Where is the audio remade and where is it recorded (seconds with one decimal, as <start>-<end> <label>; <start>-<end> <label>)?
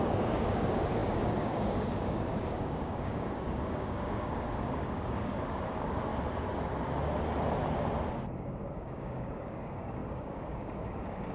0.0-6.1 remade; 6.1-8.3 recorded; 8.3-11.3 remade